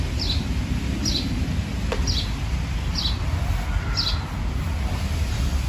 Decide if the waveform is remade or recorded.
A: recorded